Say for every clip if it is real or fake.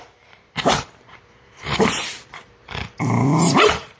fake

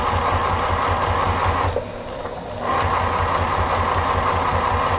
real